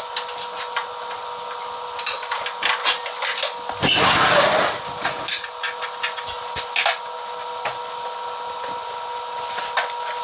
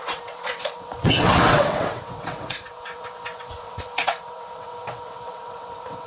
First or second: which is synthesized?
second